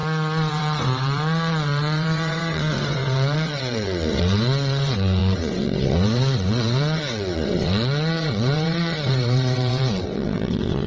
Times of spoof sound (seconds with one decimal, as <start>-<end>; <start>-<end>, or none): 0.5-10.9